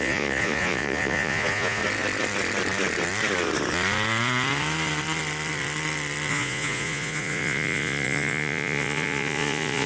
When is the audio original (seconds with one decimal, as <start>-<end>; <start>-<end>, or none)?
1.8-6.3